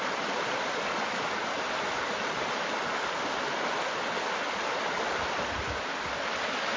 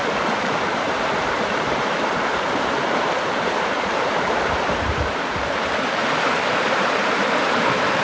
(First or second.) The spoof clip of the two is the second